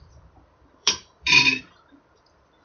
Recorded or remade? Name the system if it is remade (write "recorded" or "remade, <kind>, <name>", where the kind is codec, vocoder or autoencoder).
remade, vocoder, BigVGAN v2